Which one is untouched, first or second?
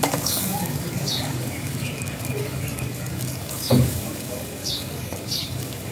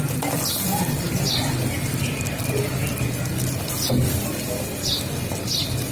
second